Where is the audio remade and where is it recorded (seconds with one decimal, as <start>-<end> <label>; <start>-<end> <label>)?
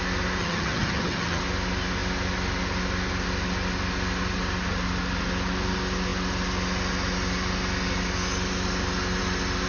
0.0-0.4 recorded; 0.4-1.4 remade; 1.4-9.7 recorded